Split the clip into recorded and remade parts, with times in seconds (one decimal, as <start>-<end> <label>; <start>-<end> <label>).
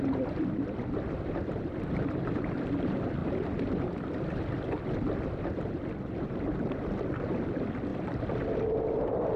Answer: 0.0-9.4 remade